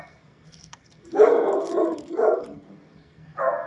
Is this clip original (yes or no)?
no